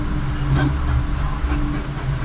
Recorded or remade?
recorded